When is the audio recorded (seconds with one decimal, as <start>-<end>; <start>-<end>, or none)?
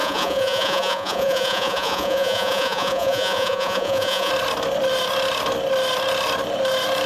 4.3-7.1